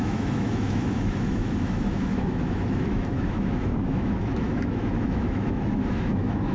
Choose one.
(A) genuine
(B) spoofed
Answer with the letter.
B